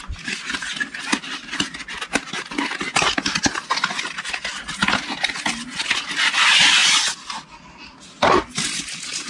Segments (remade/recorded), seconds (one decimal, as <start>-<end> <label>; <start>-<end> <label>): 0.0-9.3 recorded